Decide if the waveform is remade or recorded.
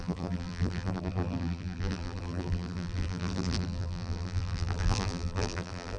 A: remade